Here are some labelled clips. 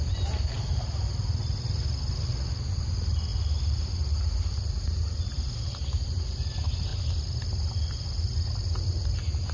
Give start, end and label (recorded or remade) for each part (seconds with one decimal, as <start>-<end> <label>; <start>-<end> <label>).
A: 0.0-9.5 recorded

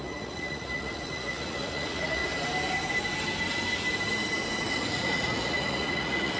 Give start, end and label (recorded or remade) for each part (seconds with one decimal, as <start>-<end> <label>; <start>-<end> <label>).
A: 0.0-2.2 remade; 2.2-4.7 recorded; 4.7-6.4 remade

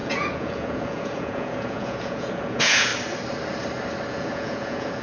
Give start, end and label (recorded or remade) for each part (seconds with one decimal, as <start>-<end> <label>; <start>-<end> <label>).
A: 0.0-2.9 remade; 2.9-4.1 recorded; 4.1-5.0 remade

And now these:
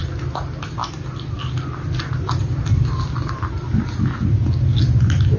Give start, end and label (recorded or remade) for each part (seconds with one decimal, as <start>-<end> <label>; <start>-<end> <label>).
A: 0.0-5.4 recorded

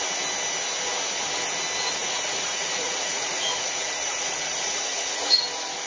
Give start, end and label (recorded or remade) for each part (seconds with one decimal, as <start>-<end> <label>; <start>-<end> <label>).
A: 0.0-2.0 recorded; 2.0-5.4 remade; 5.4-5.9 recorded

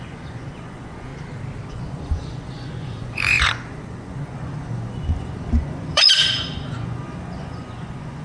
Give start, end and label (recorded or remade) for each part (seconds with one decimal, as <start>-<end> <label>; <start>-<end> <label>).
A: 0.0-1.1 remade; 1.1-1.7 recorded; 1.7-8.2 remade